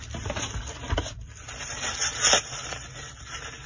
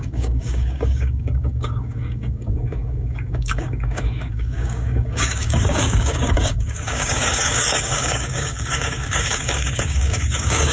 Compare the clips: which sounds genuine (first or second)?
first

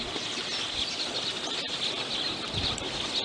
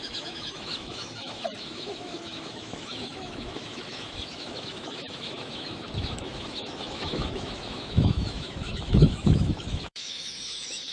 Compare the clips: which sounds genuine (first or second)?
first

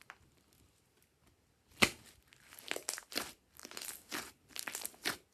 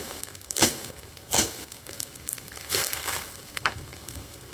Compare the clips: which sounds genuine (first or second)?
first